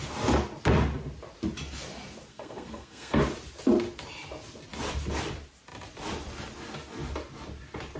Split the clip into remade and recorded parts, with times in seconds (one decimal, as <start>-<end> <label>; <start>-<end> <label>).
0.0-2.3 recorded; 2.3-3.2 remade; 3.2-8.0 recorded

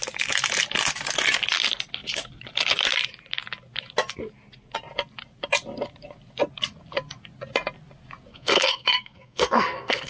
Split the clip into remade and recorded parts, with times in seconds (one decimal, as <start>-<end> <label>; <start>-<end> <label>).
0.0-8.3 recorded; 8.3-10.1 remade

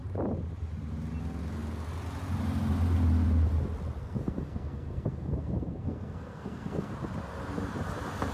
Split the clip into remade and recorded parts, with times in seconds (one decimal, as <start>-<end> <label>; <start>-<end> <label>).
0.0-4.0 recorded; 4.0-6.9 remade; 6.9-8.3 recorded

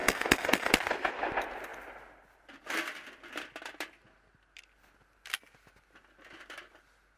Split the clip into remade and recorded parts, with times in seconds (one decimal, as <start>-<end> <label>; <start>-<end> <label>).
0.0-0.7 remade; 0.7-7.2 recorded

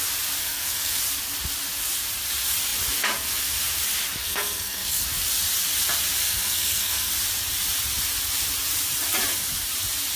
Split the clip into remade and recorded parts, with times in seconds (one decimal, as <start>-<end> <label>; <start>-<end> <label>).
0.0-0.4 recorded; 0.4-1.0 remade; 1.0-4.2 recorded; 4.2-5.0 remade; 5.0-6.2 recorded; 6.2-7.1 remade; 7.1-10.2 recorded

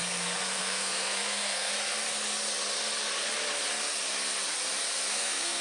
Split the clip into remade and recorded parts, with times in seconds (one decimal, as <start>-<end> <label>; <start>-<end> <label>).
0.0-1.7 remade; 1.7-5.1 recorded; 5.1-5.6 remade

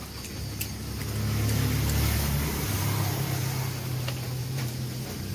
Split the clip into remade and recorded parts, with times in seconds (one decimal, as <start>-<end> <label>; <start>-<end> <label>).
0.0-5.3 recorded

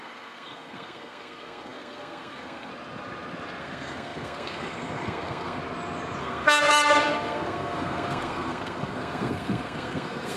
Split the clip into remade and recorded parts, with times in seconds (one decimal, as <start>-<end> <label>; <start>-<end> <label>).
0.0-2.7 remade; 2.7-3.6 recorded; 3.6-5.6 remade; 5.6-6.2 recorded; 6.2-10.4 remade